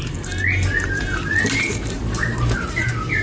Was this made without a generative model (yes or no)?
no